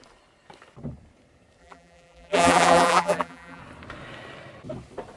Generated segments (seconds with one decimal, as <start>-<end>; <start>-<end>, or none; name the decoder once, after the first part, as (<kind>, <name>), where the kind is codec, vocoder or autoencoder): 1.6-3.6 (vocoder, BigVGAN v2)